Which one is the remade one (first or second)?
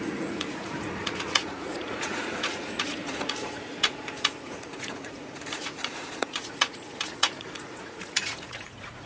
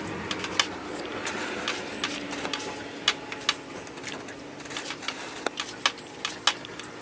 first